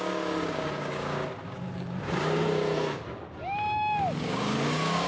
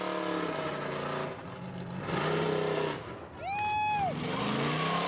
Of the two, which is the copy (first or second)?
first